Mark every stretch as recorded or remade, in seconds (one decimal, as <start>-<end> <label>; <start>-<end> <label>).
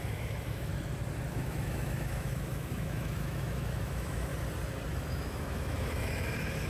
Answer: 0.0-0.7 remade; 0.7-1.3 recorded; 1.3-4.3 remade; 4.3-4.9 recorded; 4.9-6.7 remade